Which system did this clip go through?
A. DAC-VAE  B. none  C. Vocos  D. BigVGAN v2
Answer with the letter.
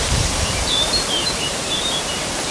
D